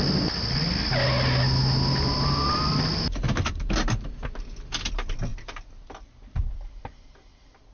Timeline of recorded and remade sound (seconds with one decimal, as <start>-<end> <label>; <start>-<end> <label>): 0.0-7.7 recorded